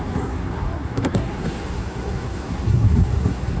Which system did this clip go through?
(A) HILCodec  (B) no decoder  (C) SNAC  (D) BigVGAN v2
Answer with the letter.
C